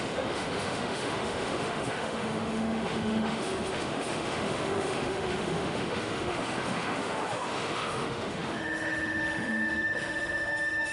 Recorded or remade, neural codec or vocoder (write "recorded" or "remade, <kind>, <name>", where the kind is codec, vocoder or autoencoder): remade, autoencoder, DAC-VAE